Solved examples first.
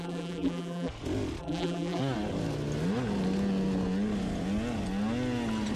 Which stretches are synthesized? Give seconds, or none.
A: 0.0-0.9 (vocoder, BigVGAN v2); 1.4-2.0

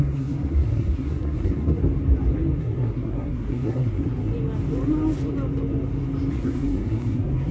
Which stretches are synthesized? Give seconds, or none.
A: 0.0-1.8 (codec, SNAC); 2.6-4.3; 6.3-7.5

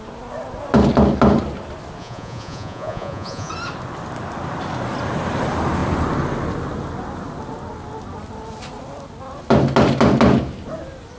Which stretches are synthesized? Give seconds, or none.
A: 2.0-3.5 (vocoder, Vocos)